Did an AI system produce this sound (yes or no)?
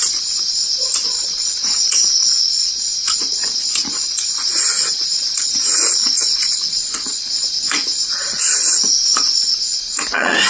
yes